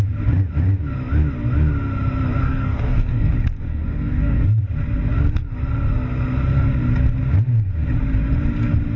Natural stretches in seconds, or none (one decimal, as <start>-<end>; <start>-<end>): 0.0-2.4; 3.3-3.7; 4.6-9.0